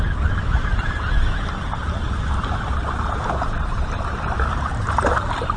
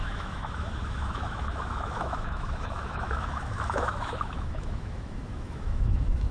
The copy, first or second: second